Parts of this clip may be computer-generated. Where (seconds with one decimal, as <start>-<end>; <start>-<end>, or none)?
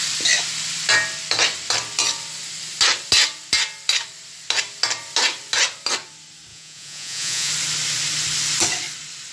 6.5-7.5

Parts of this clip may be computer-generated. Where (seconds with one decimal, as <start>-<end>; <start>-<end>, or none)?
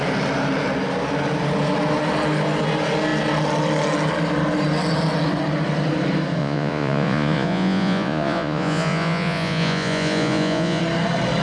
6.4-10.8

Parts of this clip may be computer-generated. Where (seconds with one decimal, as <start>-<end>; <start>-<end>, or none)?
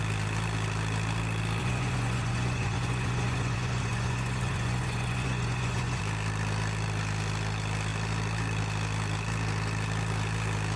1.6-6.0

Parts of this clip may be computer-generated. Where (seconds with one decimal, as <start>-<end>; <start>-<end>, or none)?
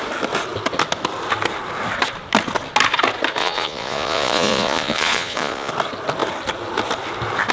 3.4-5.7